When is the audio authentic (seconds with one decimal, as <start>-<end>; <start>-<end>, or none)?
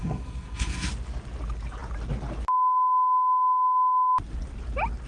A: 0.9-5.1